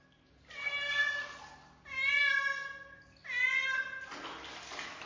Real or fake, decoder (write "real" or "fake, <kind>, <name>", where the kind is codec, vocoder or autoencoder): real